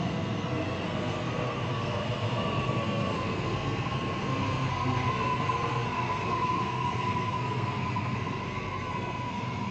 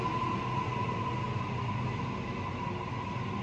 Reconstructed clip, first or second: first